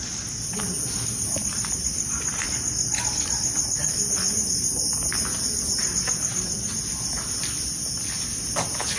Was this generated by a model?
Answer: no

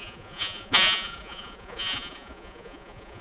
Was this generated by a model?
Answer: yes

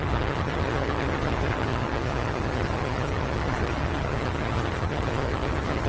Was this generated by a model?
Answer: yes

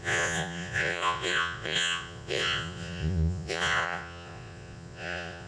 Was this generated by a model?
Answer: yes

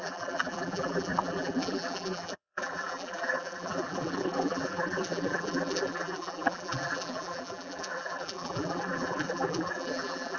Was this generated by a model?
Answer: yes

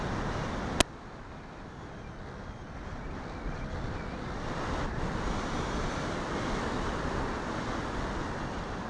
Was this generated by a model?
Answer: no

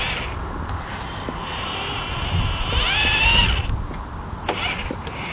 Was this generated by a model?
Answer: no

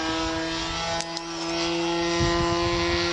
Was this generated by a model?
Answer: no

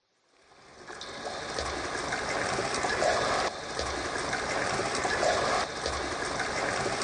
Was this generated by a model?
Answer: no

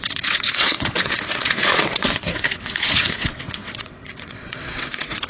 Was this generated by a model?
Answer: yes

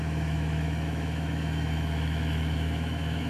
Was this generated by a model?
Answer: yes